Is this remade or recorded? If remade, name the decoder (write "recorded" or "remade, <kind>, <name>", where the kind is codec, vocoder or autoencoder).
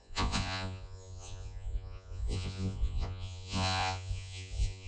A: remade, vocoder, Vocos